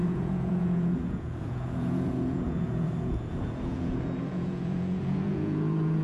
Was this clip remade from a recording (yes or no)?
yes